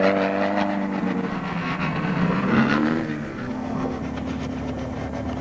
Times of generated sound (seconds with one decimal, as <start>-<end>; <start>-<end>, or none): 1.3-4.0